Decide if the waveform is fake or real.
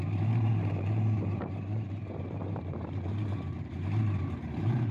fake